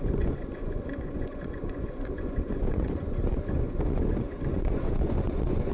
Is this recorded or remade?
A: remade